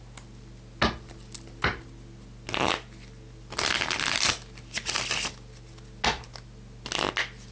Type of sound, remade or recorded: recorded